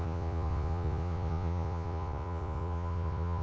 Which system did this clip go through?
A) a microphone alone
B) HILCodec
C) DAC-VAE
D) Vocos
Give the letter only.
D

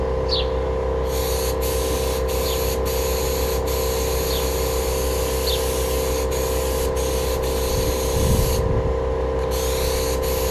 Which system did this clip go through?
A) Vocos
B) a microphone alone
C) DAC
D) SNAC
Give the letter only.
B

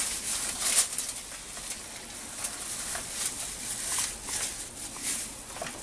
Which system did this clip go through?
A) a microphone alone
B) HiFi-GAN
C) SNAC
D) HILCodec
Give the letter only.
A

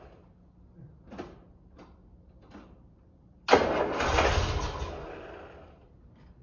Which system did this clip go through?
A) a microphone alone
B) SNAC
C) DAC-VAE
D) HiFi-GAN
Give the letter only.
A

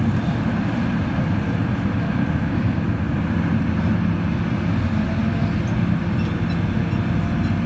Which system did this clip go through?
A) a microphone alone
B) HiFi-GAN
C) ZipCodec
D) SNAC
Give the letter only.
A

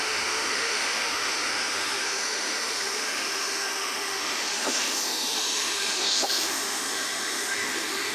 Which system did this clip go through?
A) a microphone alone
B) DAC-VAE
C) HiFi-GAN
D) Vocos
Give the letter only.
B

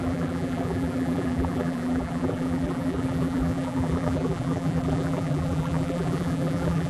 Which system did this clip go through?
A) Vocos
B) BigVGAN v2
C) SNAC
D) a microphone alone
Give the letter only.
B